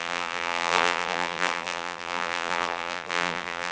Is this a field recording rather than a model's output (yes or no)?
no